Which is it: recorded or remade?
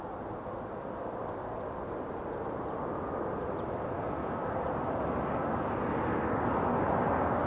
recorded